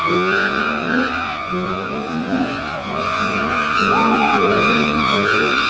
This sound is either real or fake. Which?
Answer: fake